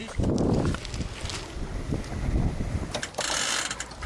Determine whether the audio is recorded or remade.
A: recorded